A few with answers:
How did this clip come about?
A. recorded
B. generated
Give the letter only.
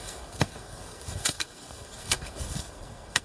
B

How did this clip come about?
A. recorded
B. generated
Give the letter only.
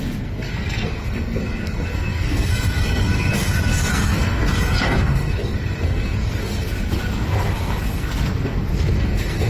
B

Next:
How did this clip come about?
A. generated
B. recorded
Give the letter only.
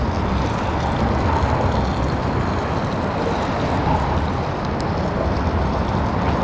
B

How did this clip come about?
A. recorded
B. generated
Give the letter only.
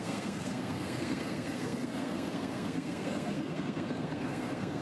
B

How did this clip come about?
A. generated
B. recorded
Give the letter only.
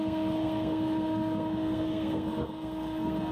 A